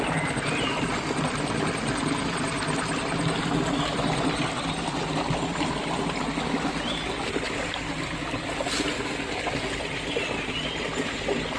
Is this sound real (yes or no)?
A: yes